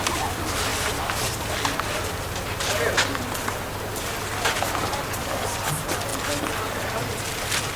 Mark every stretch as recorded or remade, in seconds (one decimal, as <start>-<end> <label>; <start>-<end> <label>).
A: 0.0-0.7 remade; 0.7-5.0 recorded; 5.0-7.8 remade